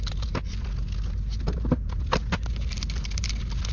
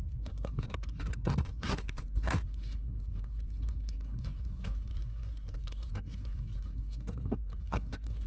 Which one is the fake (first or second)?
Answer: second